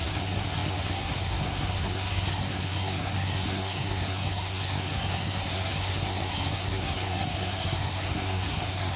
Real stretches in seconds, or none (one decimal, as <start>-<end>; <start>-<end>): none